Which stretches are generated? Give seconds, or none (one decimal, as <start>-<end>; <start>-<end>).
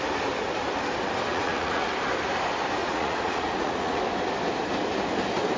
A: 1.3-1.9; 2.8-4.0